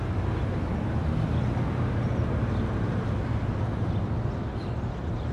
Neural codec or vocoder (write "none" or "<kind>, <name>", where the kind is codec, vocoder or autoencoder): none